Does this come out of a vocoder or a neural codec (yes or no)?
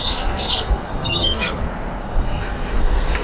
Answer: yes